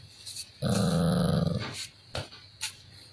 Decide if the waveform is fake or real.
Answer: real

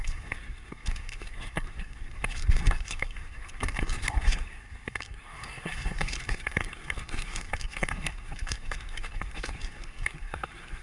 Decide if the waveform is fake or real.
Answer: fake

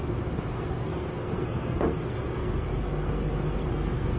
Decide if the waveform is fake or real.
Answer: fake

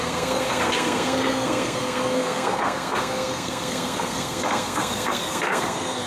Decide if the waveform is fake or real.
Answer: fake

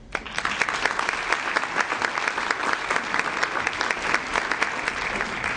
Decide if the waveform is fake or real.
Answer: real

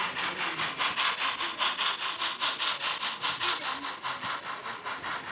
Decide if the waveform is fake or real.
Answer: real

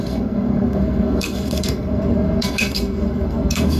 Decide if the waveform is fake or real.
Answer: fake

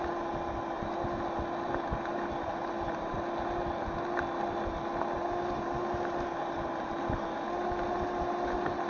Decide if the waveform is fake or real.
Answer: real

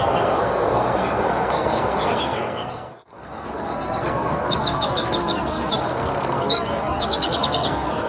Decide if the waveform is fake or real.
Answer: fake